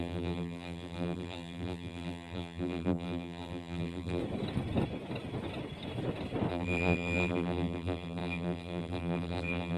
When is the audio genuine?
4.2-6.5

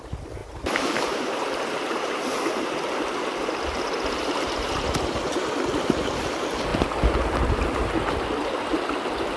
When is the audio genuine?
0.0-0.4; 5.5-9.4

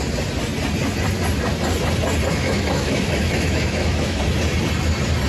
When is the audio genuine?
0.0-2.4; 4.2-5.3

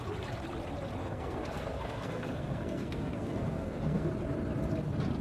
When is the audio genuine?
0.0-1.0; 4.1-5.2

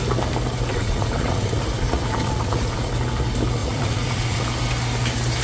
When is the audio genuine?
0.0-0.7; 2.9-3.6; 4.4-5.4

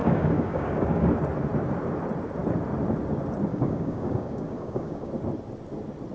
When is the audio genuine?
1.1-3.5; 5.1-6.1